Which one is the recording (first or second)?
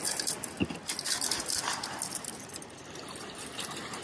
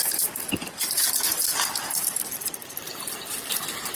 first